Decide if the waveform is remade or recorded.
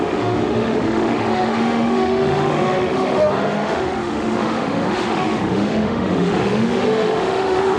remade